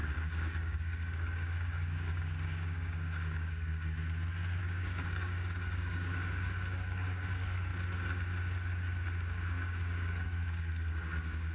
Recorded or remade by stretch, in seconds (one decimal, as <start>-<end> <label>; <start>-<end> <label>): 0.0-3.7 remade; 3.7-4.6 recorded; 4.6-7.7 remade; 7.7-9.2 recorded; 9.2-11.5 remade